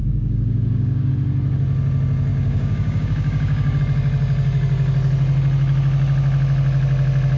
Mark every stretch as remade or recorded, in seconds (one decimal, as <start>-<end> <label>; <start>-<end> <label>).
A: 0.0-1.1 remade; 1.1-2.3 recorded; 2.3-3.8 remade; 3.8-7.4 recorded